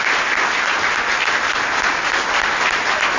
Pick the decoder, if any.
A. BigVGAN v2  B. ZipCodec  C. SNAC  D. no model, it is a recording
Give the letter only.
D